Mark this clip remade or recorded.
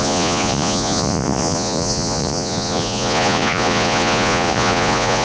remade